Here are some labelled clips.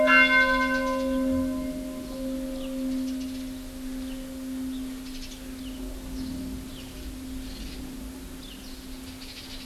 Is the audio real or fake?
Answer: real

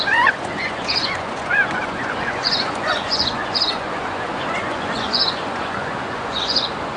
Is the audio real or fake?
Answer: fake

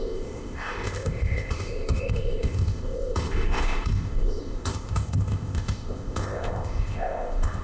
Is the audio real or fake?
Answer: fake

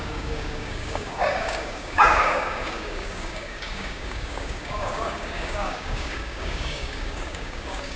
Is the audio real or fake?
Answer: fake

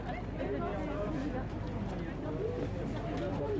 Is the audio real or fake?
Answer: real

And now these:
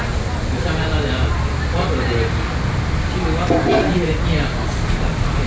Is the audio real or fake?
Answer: real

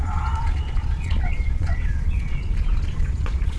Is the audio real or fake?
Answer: fake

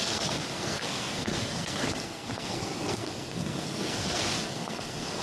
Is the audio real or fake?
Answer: fake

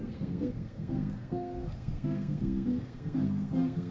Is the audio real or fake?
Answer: fake